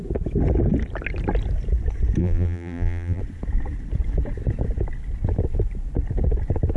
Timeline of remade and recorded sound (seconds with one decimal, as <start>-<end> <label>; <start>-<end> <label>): 0.0-2.2 recorded; 2.2-3.2 remade; 3.2-6.8 recorded